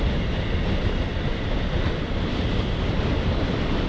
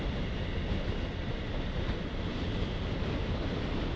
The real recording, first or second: second